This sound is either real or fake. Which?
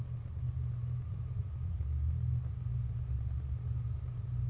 real